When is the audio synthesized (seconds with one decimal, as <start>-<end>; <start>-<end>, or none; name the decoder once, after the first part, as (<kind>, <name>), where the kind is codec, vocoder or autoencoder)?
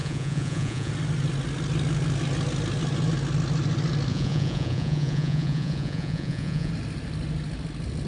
0.0-0.9 (vocoder, Vocos); 4.1-6.7